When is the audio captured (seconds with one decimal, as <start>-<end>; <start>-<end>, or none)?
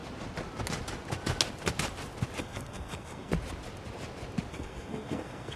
0.0-2.4; 3.3-4.5